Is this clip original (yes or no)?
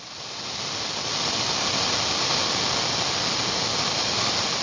yes